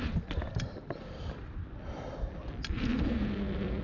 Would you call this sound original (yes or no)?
no